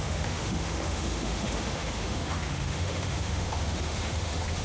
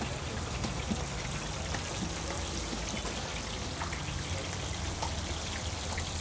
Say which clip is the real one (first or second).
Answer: second